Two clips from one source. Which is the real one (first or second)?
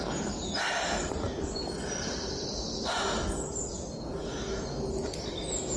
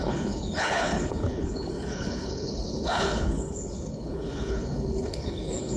first